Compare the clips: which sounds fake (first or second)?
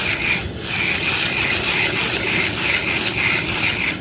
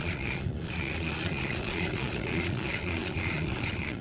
second